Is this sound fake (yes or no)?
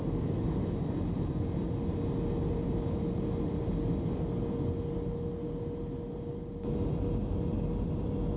no